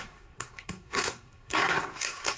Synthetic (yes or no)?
yes